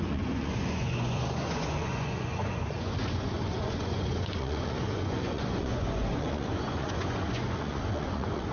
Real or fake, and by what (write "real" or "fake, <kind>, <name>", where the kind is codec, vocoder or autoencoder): fake, vocoder, Vocos